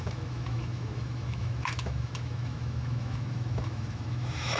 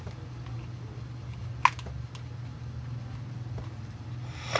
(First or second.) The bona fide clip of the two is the second